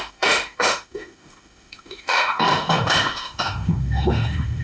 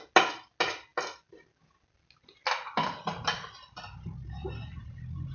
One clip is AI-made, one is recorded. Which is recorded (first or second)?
second